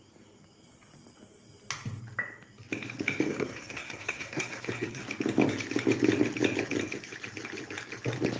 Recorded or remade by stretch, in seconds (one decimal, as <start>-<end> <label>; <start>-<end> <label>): 0.0-3.3 recorded; 3.3-5.0 remade; 5.0-8.4 recorded